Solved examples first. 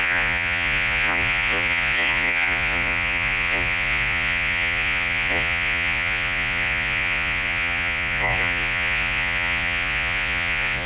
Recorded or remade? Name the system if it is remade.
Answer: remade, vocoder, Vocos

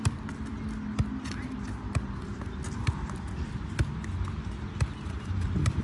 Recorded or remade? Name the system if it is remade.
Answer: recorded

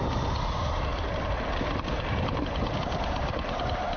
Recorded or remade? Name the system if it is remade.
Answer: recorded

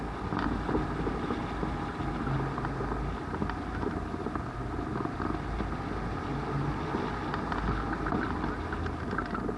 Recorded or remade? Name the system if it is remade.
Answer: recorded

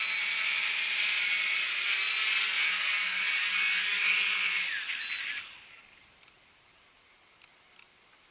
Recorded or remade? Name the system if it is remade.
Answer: recorded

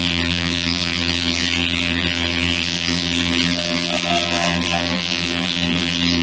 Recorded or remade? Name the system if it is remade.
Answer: remade, vocoder, BigVGAN v2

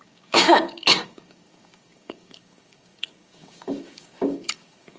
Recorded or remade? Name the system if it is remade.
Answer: remade, codec, DAC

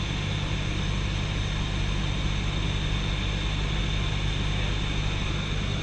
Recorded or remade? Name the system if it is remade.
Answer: recorded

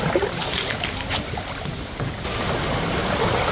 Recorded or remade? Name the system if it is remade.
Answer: recorded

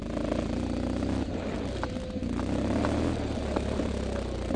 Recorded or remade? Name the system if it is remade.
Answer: recorded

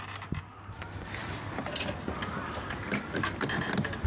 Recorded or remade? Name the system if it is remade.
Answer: recorded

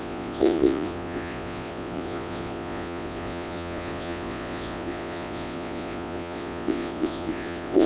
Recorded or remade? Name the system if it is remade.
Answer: remade, vocoder, Vocos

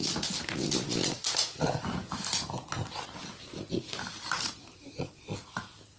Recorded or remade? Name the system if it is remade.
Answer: recorded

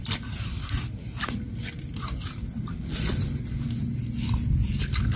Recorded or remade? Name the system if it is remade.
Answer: recorded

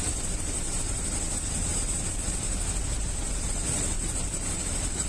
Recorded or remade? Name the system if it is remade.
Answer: remade, vocoder, BigVGAN v2